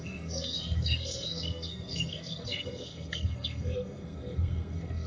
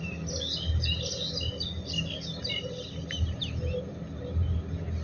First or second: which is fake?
first